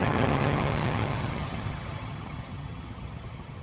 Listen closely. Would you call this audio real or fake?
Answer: fake